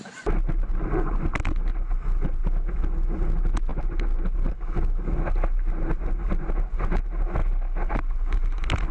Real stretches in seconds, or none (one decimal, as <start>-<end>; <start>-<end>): 0.0-8.9